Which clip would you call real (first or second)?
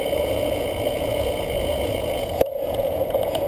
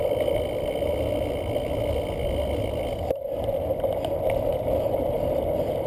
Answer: second